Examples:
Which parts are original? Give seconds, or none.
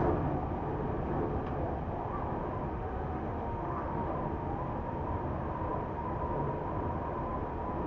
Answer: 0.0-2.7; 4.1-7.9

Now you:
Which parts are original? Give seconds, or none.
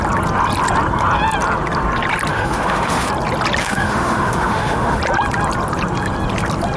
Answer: 0.0-2.3; 3.1-3.6; 5.0-6.8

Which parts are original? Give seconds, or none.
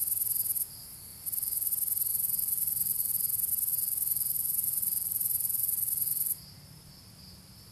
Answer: 0.0-1.1; 1.7-2.1; 3.1-3.7; 6.9-7.7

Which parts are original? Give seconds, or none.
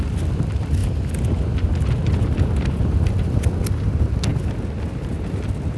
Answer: 0.0-5.8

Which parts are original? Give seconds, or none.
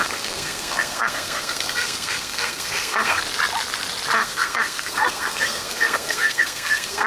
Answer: 3.2-4.2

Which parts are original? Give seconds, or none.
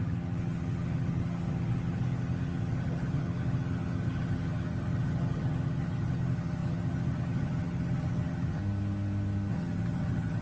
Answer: 8.6-9.5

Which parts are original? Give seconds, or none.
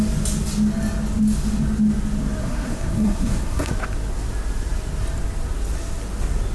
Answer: 0.0-2.4; 3.7-6.5